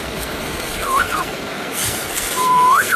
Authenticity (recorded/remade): remade